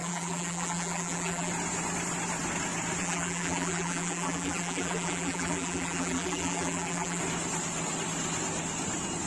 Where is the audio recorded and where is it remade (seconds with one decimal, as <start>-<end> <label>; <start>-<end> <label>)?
0.0-1.5 remade; 1.5-3.0 recorded; 3.0-7.2 remade; 7.2-9.3 recorded